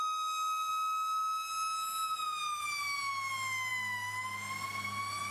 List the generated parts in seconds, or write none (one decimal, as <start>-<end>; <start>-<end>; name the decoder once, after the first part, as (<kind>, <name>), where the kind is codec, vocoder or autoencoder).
none